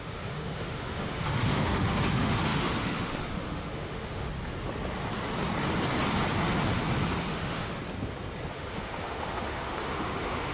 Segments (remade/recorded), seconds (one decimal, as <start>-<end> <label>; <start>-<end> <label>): 0.0-4.3 remade; 4.3-7.3 recorded; 7.3-7.8 remade; 7.8-8.5 recorded; 8.5-10.5 remade